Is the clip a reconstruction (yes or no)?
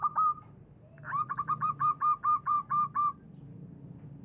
yes